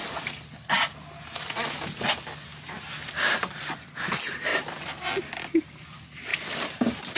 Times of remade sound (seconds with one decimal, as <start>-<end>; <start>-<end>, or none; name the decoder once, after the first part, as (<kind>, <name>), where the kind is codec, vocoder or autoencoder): none